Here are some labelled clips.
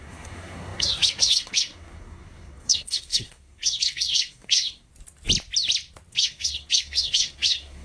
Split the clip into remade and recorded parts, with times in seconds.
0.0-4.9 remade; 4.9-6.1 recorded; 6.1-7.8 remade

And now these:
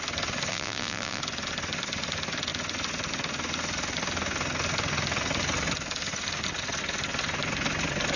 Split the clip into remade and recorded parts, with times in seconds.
0.0-0.5 recorded; 0.5-1.2 remade; 1.2-8.2 recorded

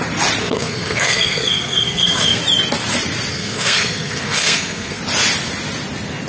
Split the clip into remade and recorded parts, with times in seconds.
0.0-0.4 recorded; 0.4-2.4 remade; 2.4-3.3 recorded; 3.3-5.0 remade; 5.0-6.3 recorded

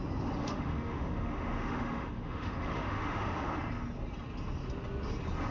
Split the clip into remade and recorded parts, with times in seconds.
0.0-0.4 recorded; 0.4-3.5 remade; 3.5-5.5 recorded